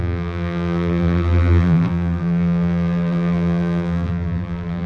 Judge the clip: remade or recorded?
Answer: remade